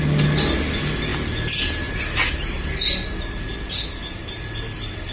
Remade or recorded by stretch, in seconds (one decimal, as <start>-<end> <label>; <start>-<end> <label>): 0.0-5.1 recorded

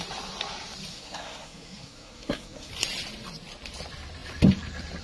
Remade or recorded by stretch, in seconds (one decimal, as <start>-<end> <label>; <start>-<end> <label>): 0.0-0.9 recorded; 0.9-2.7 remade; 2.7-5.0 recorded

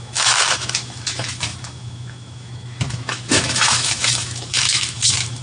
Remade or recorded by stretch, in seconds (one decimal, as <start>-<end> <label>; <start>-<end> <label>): 0.0-5.4 remade

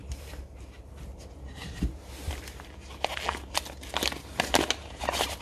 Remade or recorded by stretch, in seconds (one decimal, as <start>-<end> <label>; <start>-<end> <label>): 0.0-0.9 remade; 0.9-1.6 recorded; 1.6-2.3 remade; 2.3-4.8 recorded; 4.8-5.4 remade

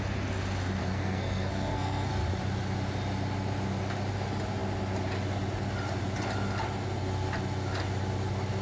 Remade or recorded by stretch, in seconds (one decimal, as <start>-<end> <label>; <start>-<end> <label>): 0.0-0.8 recorded; 0.8-2.1 remade; 2.1-8.6 recorded

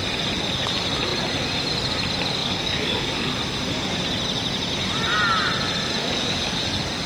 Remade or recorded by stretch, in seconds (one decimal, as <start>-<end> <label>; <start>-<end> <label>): 0.0-2.4 recorded; 2.4-3.3 remade; 3.3-6.0 recorded; 6.0-6.6 remade; 6.6-7.1 recorded

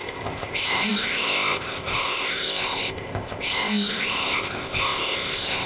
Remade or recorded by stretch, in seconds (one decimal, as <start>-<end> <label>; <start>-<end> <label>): 0.0-5.7 remade